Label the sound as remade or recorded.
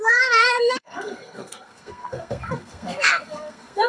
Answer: remade